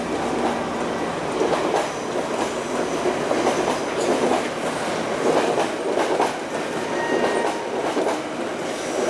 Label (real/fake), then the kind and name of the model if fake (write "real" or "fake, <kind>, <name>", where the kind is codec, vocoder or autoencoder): real